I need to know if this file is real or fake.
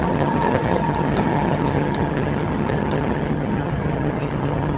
fake